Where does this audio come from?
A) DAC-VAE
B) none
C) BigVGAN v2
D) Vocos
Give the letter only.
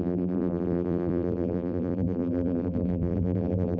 C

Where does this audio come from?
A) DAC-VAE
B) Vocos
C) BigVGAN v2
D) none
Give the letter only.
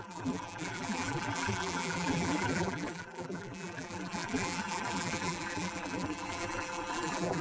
C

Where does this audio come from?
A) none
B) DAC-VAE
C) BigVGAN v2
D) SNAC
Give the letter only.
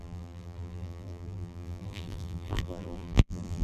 C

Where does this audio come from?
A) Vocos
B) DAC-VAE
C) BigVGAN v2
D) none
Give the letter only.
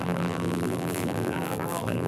C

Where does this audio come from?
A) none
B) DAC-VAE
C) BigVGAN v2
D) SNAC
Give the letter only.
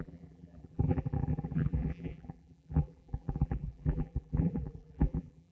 C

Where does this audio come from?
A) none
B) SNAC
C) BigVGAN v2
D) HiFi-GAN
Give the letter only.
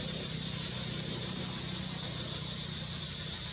A